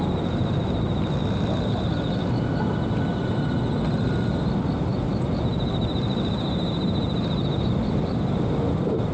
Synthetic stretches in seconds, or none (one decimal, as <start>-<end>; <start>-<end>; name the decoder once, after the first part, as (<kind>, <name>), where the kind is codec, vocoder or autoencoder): none